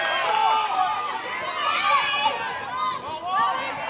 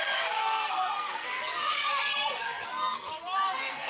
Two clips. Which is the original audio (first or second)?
first